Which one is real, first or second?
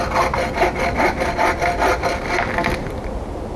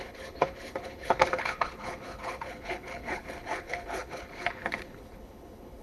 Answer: first